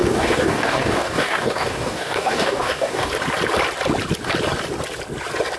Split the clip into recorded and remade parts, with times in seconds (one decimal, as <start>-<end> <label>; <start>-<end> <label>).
0.0-3.1 remade; 3.1-5.6 recorded